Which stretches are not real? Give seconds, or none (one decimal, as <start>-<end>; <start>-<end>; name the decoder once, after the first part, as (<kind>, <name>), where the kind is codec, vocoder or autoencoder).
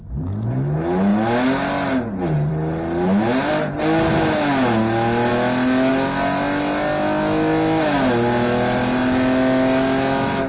none